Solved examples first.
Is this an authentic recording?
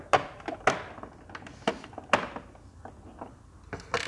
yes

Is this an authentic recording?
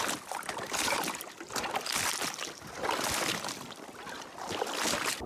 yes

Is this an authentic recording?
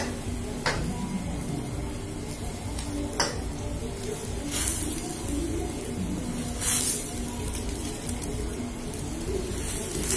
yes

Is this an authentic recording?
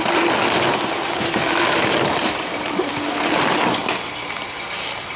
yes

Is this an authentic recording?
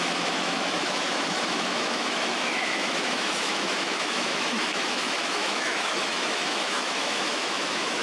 no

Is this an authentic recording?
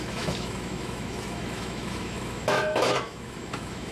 no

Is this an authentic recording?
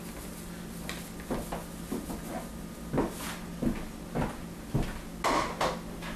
yes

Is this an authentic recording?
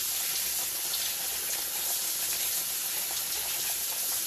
yes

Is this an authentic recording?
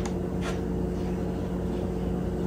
yes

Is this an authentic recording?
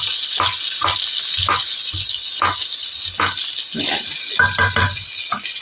yes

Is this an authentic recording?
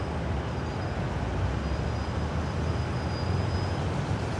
yes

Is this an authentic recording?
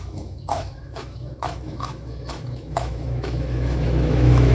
no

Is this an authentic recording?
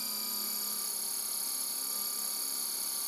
yes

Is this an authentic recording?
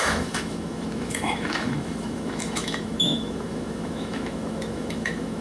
no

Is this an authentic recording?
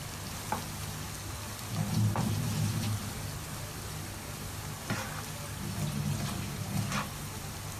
yes